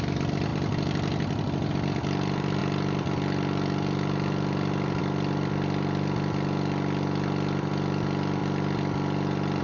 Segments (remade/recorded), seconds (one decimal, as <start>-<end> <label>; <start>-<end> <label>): 0.0-9.6 recorded